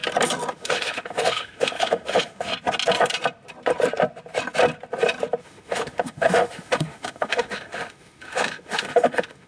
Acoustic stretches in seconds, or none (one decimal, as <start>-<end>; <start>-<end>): 0.0-0.5; 2.5-5.4